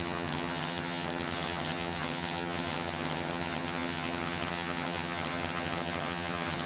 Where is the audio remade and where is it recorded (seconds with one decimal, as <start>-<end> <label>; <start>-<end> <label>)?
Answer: 0.0-6.7 remade